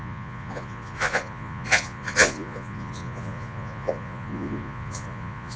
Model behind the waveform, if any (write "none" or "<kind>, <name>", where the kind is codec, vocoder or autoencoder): vocoder, Vocos